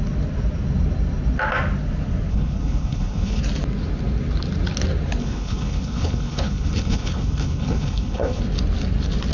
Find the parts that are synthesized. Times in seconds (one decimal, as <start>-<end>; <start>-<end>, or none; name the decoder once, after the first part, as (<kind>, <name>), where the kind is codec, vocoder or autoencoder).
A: 2.3-3.4 (codec, HILCodec); 5.2-8.4